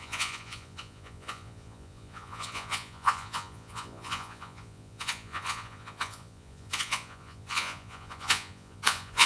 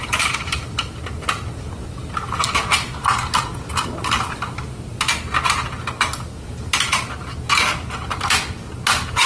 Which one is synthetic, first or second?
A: first